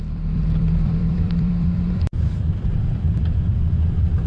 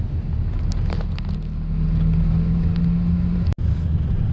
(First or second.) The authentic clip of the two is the second